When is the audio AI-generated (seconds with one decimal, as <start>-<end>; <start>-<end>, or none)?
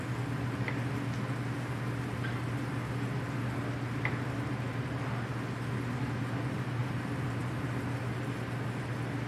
6.8-7.4